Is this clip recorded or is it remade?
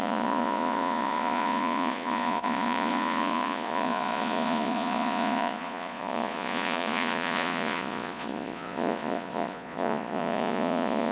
remade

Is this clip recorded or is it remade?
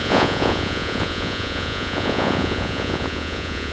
remade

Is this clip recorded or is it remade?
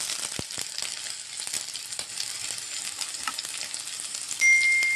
recorded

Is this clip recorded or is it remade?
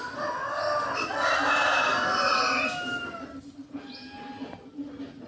recorded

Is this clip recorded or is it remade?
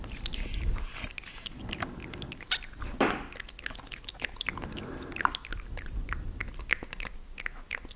recorded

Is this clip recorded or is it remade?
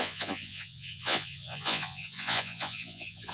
remade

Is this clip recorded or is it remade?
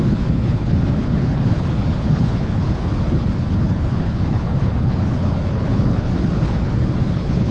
remade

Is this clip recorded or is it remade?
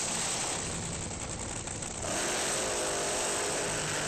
recorded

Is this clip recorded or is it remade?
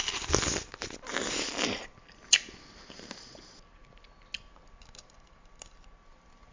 recorded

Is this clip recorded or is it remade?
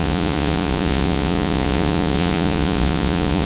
remade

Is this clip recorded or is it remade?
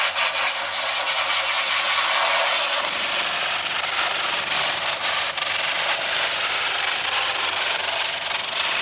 recorded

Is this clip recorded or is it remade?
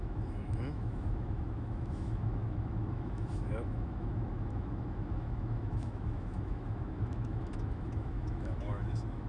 remade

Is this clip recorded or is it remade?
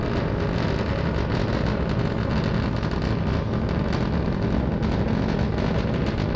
recorded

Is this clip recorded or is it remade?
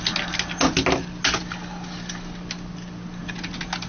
recorded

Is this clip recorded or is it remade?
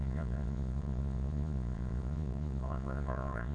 remade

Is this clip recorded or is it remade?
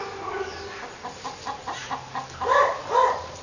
recorded